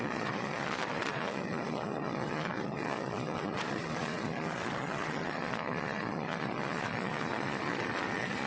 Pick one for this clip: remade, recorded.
remade